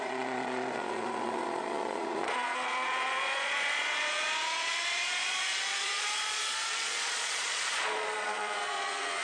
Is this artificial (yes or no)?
yes